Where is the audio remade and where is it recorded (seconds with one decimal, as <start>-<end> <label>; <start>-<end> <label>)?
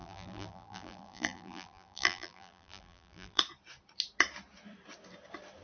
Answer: 0.0-3.4 remade; 3.4-5.6 recorded